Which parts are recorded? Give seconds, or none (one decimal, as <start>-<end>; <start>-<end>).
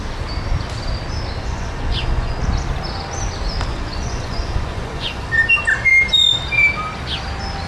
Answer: 0.0-1.4; 2.4-3.7; 5.3-7.7